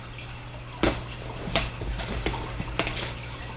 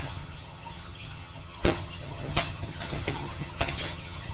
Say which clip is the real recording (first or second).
first